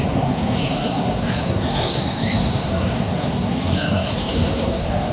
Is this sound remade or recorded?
remade